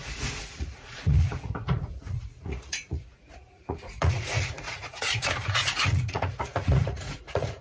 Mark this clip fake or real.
fake